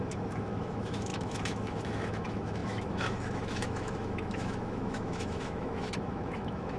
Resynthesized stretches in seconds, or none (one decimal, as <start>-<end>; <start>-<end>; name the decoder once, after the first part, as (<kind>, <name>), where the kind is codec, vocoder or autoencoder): 0.0-6.8 (autoencoder, DAC-VAE)